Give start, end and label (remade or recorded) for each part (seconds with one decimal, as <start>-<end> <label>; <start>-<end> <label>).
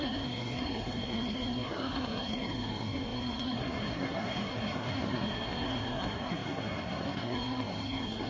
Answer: 0.0-8.3 remade